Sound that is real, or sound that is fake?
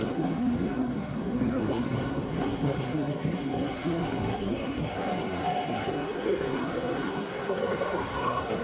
fake